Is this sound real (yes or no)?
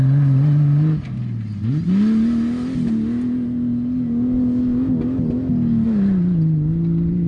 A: yes